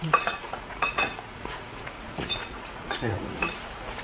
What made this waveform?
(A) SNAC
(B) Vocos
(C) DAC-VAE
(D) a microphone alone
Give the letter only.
B